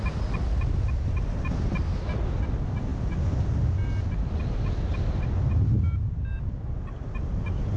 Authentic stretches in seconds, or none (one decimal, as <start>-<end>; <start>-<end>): 0.0-7.8